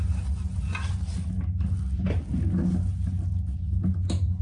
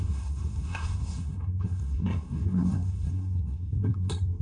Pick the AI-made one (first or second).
second